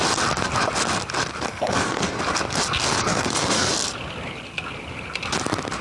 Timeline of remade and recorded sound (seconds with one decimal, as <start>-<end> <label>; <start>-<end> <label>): 0.0-1.5 recorded; 1.5-2.2 remade; 2.2-2.8 recorded; 2.8-3.7 remade; 3.7-5.8 recorded